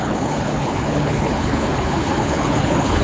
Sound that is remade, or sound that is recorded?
remade